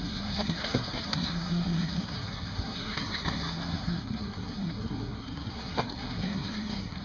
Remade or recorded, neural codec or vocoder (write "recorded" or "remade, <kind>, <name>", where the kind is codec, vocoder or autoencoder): remade, codec, SNAC